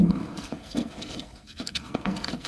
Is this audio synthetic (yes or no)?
yes